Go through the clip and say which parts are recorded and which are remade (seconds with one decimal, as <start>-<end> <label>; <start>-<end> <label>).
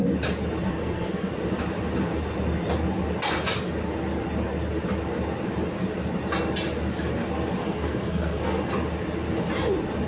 0.0-0.7 recorded; 0.7-1.3 remade; 1.3-7.6 recorded; 7.6-8.7 remade; 8.7-10.1 recorded